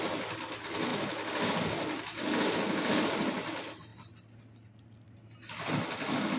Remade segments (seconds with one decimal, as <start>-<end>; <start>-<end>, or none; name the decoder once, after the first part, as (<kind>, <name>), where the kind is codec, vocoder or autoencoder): none